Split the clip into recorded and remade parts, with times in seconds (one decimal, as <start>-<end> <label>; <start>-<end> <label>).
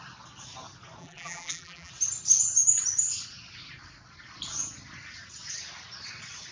0.0-1.0 recorded; 1.0-1.9 remade; 1.9-6.5 recorded